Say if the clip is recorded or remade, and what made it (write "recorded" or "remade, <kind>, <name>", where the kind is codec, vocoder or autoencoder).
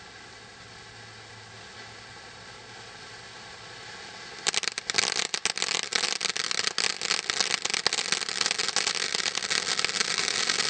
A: recorded